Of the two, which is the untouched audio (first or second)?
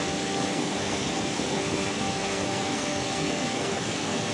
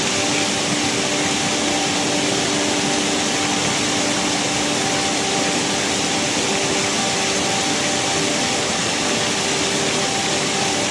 second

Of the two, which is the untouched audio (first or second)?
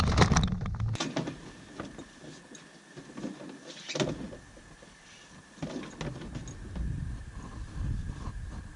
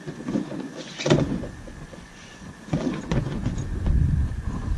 first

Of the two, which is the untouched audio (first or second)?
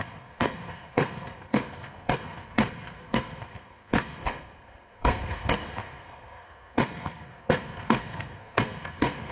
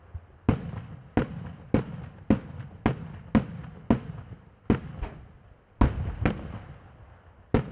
second